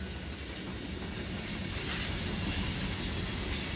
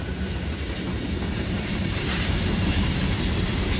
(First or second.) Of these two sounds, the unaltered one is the first